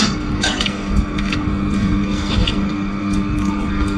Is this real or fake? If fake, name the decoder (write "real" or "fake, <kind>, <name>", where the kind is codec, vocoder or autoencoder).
fake, codec, SNAC